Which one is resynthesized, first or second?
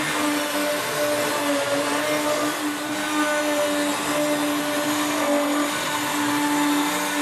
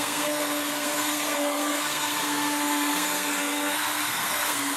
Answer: second